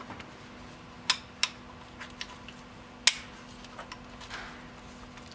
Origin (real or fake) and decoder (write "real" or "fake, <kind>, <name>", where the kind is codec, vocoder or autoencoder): real